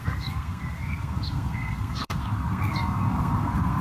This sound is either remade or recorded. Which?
remade